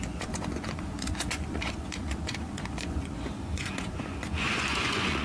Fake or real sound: fake